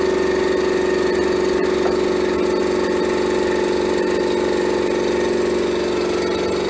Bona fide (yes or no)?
yes